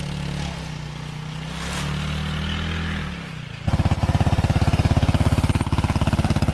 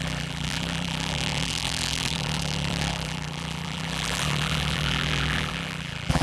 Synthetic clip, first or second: second